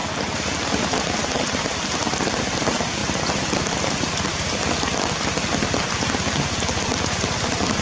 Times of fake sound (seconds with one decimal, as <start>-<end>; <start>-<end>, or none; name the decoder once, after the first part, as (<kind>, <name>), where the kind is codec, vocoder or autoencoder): 0.0-2.4 (vocoder, BigVGAN v2)